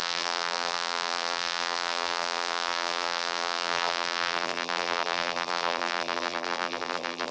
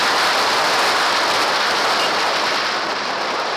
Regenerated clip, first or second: first